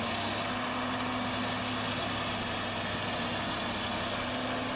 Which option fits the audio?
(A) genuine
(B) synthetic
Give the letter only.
A